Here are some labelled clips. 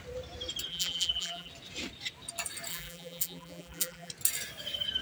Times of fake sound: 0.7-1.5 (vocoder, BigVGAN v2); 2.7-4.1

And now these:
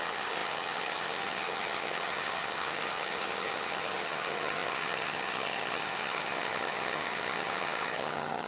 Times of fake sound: 0.0-8.5 (vocoder, HiFi-GAN)